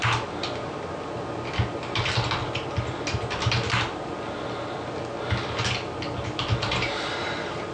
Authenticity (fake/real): real